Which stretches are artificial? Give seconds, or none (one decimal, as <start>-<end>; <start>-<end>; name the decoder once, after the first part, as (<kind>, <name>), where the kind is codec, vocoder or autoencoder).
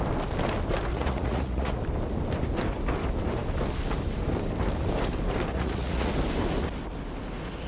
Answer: 0.9-1.8 (vocoder, Vocos); 5.5-6.1